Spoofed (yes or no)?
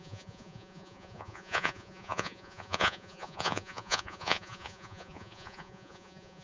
yes